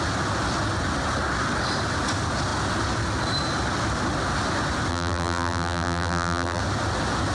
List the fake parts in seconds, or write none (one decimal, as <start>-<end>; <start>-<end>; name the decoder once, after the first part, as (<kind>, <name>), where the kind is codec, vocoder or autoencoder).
4.9-6.6 (vocoder, BigVGAN v2)